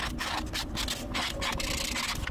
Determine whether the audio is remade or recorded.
recorded